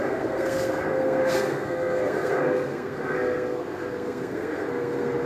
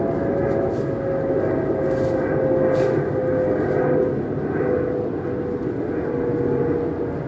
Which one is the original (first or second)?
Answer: second